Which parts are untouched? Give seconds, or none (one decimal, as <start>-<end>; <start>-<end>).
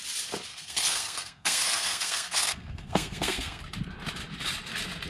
0.0-0.5; 3.6-5.1